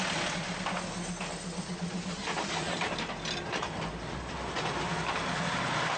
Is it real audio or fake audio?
real